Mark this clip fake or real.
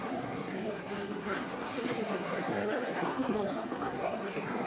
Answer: fake